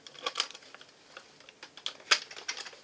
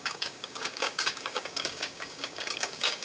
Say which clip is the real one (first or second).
first